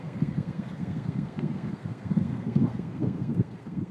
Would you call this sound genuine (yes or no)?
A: no